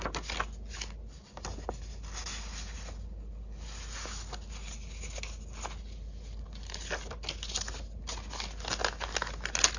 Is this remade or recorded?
recorded